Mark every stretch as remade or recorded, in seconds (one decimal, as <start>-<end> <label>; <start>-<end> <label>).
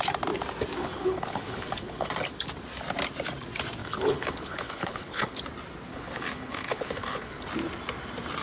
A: 0.0-0.8 recorded; 0.8-2.1 remade; 2.1-3.8 recorded; 3.8-5.4 remade; 5.4-5.9 recorded; 5.9-7.5 remade; 7.5-8.4 recorded